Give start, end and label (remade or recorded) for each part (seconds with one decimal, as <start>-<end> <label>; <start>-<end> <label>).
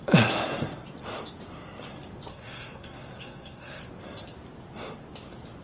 0.0-2.3 recorded; 2.3-3.8 remade; 3.8-5.6 recorded